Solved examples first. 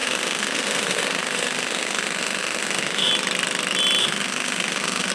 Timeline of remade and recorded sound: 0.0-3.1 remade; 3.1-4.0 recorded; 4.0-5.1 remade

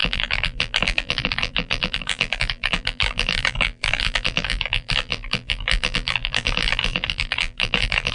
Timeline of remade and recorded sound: 0.0-8.1 remade

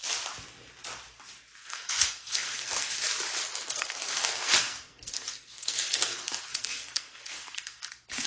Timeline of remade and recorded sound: 0.0-1.6 recorded; 1.6-2.9 remade; 2.9-3.4 recorded; 3.4-7.9 remade; 7.9-8.3 recorded